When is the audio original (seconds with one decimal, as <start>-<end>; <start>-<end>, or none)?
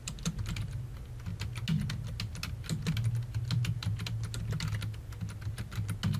0.0-6.2